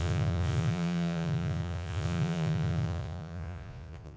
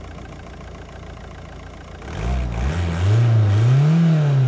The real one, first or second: second